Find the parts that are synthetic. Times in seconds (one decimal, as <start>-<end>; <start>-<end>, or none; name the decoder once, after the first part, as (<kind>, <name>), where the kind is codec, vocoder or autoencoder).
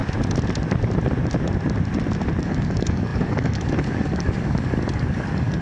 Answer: 2.4-5.6 (codec, DAC)